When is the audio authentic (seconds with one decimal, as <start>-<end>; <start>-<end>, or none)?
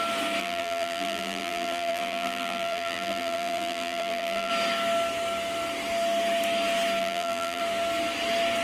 0.0-0.4; 4.5-7.0; 7.6-8.6